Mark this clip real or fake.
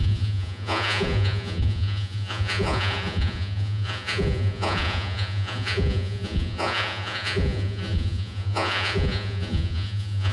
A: fake